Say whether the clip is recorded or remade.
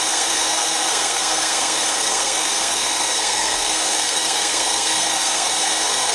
remade